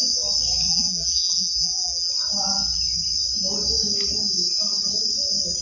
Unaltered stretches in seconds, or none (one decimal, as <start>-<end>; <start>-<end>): 0.0-0.7; 2.1-5.6